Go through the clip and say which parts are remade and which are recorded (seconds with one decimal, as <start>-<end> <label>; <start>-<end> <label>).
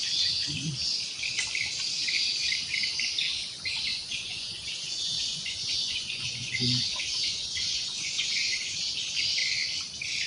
0.0-3.9 recorded; 3.9-8.8 remade; 8.8-10.3 recorded